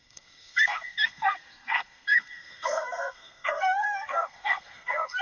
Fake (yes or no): yes